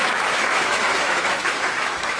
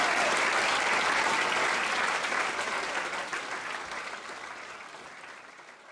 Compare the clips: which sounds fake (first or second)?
first